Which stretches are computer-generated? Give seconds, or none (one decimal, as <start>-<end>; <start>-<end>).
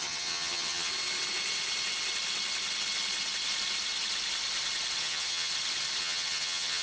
0.0-0.9; 5.0-5.5; 6.0-6.8